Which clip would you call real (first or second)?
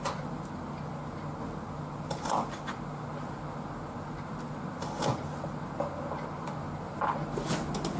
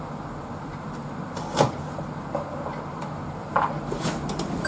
first